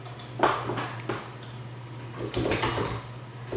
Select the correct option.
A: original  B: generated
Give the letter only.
A